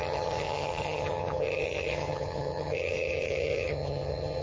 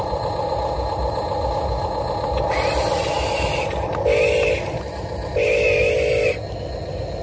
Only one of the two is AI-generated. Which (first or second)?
first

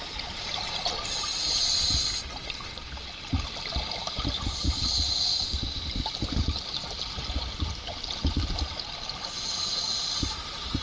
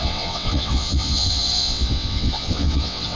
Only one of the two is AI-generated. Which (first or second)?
second